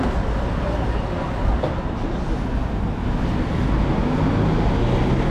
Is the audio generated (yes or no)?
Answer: no